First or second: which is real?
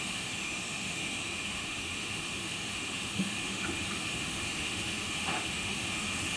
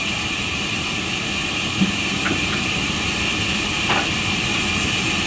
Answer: second